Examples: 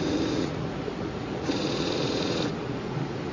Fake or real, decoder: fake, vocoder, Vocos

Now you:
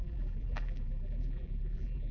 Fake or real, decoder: fake, vocoder, BigVGAN v2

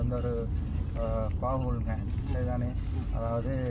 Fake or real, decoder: real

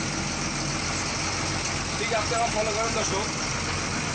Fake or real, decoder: real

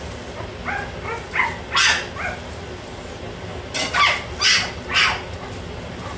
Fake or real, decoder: real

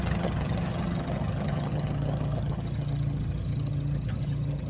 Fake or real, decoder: fake, vocoder, HiFi-GAN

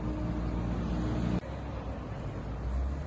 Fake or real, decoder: real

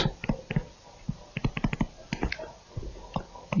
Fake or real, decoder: real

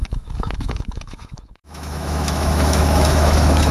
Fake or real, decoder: fake, autoencoder, DAC-VAE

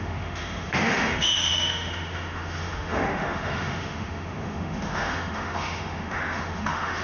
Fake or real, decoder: fake, autoencoder, DAC-VAE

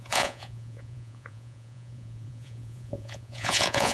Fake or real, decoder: fake, vocoder, Vocos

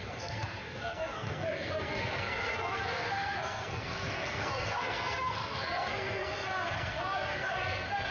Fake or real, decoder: fake, codec, SNAC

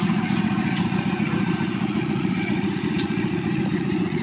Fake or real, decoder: fake, vocoder, Vocos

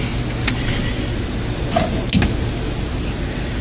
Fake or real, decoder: real